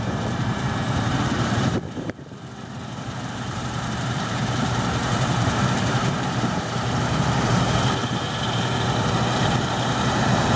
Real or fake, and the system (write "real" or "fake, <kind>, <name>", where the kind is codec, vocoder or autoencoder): fake, vocoder, BigVGAN v2